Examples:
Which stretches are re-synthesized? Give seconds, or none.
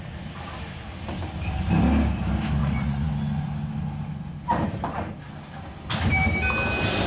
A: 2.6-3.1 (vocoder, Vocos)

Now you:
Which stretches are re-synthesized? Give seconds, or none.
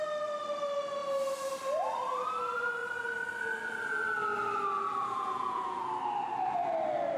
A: 4.9-5.8 (vocoder, Vocos)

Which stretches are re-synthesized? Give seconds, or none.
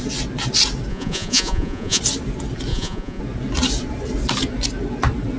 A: 0.9-2.0 (vocoder, Vocos); 2.7-3.2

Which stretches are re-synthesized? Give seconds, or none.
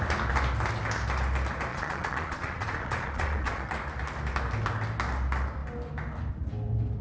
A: 1.7-3.7 (vocoder, Vocos)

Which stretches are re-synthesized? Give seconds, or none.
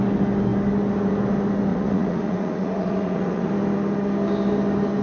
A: 1.7-3.5 (vocoder, Vocos)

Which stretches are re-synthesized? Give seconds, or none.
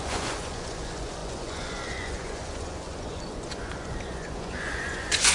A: 0.0-5.3 (vocoder, Vocos)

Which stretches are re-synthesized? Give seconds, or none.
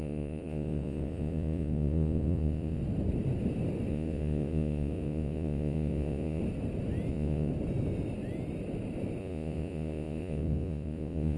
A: 0.0-2.8 (vocoder, Vocos); 3.9-6.4; 7.1-7.5; 9.2-11.4